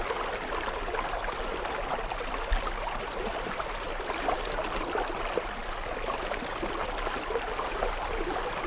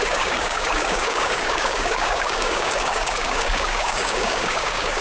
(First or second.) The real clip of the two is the first